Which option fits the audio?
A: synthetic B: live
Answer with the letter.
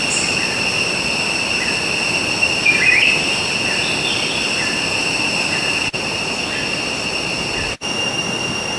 B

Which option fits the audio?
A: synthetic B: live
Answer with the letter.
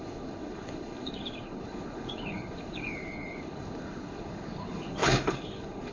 A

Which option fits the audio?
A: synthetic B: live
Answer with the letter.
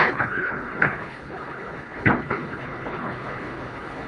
A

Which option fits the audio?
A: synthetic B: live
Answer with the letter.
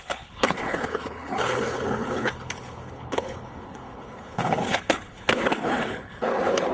A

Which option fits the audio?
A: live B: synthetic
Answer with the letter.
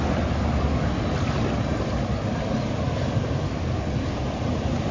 A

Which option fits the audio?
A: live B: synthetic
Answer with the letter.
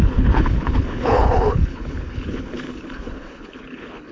B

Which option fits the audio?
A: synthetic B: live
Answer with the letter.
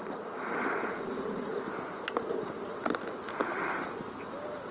B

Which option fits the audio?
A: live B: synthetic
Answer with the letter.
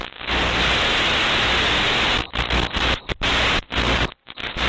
A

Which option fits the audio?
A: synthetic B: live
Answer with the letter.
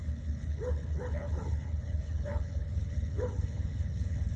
A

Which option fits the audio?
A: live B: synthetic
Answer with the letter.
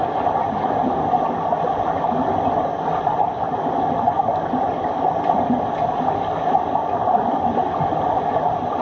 A